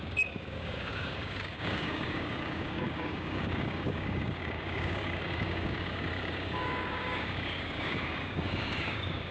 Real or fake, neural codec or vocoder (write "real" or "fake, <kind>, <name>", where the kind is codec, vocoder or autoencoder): fake, codec, DAC